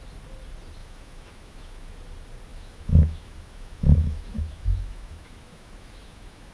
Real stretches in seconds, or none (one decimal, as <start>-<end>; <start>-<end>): 0.0-0.8; 1.9-2.5